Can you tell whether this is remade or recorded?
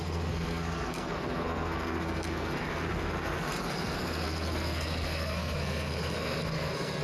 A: remade